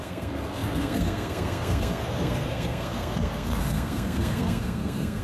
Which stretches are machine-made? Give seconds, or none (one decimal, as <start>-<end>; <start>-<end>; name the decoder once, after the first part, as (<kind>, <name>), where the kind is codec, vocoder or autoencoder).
0.0-5.2 (codec, SNAC)